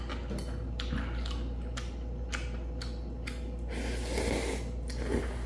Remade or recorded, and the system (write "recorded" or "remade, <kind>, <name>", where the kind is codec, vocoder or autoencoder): recorded